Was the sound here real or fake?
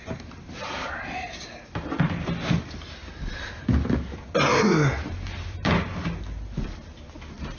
real